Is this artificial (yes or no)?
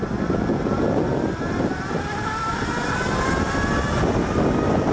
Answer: no